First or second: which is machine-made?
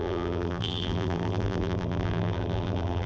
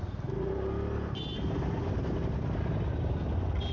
first